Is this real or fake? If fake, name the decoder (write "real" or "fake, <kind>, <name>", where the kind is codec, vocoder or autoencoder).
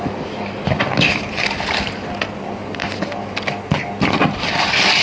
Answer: real